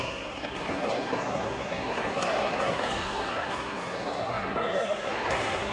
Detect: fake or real fake